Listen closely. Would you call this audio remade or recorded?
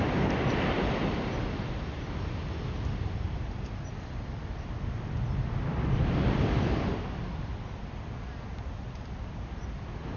recorded